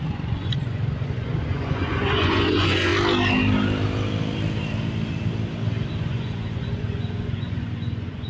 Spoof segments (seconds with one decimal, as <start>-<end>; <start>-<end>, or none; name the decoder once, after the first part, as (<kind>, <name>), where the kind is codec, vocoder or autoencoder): 0.0-2.9 (vocoder, Vocos); 6.0-8.3